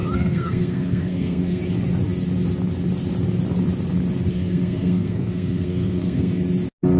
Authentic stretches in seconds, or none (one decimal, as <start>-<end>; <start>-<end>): 1.6-4.3; 6.4-7.0

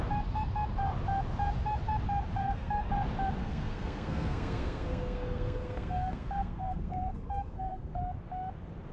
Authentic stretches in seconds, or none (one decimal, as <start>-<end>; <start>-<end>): 0.0-2.4; 2.9-3.4; 8.0-8.9